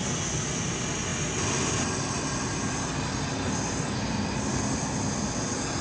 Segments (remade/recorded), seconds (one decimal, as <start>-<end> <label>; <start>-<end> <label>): 0.0-5.8 recorded